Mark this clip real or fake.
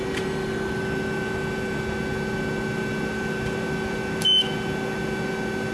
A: real